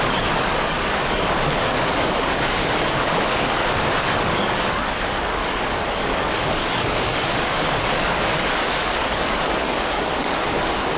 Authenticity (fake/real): fake